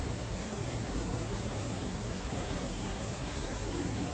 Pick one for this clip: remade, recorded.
remade